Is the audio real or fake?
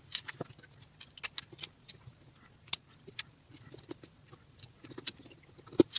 real